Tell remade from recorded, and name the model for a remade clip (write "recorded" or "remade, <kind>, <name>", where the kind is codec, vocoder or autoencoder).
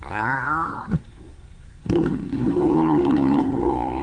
remade, codec, SNAC